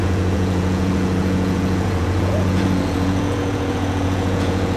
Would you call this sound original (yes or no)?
no